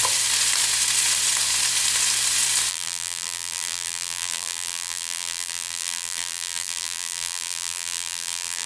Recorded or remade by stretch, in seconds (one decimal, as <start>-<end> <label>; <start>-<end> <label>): 0.0-2.7 recorded; 2.7-8.7 remade